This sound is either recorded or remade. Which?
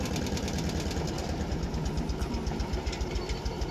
recorded